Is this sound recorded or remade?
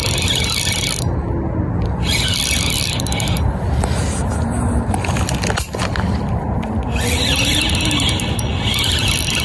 recorded